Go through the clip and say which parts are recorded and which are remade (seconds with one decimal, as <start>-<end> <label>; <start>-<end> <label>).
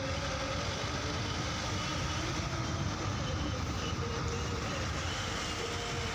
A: 0.0-1.9 recorded; 1.9-4.2 remade; 4.2-6.1 recorded